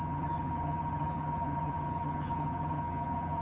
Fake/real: fake